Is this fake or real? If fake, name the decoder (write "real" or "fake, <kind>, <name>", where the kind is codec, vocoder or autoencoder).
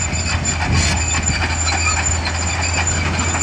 real